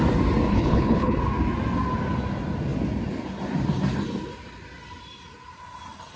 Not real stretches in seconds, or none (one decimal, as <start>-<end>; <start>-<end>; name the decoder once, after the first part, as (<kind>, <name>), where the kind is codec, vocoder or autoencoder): 0.5-1.2 (codec, HILCodec)